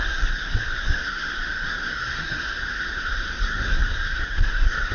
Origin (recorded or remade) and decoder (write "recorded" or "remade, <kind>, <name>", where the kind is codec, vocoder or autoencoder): remade, codec, SNAC